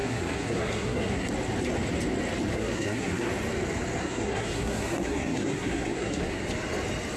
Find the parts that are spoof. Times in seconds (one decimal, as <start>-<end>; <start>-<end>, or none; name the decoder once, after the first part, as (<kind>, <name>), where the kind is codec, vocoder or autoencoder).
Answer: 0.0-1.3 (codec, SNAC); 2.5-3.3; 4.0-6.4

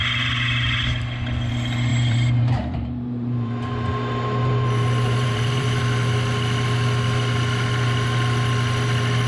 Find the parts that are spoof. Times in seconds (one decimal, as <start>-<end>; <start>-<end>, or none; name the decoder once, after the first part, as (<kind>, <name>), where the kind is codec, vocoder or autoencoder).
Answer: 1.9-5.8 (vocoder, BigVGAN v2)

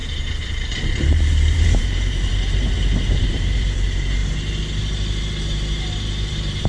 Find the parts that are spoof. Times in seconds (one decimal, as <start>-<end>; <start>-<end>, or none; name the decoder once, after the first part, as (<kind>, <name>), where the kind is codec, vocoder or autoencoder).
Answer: 0.0-4.2 (vocoder, BigVGAN v2); 6.3-6.7